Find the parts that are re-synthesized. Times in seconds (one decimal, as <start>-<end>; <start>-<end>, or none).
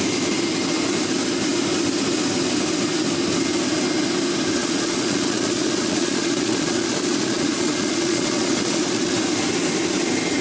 4.6-9.1